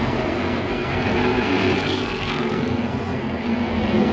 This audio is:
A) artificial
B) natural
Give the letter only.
A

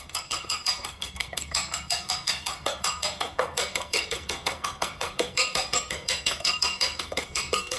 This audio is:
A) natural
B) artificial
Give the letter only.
B